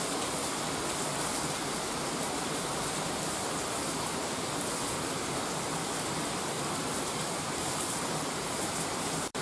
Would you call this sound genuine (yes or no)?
no